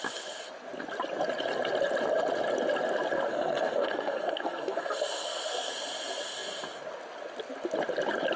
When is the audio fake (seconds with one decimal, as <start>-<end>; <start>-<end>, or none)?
3.3-5.7